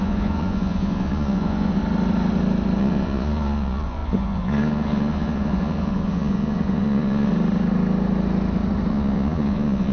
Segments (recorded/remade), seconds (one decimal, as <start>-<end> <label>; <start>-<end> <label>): 0.0-1.8 remade; 1.8-2.8 recorded; 2.8-7.3 remade; 7.3-8.9 recorded; 8.9-9.9 remade